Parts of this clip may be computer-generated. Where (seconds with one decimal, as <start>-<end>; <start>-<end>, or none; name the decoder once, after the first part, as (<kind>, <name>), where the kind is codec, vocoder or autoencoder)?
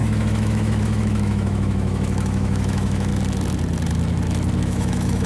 0.0-3.1 (autoencoder, DAC-VAE); 4.6-5.3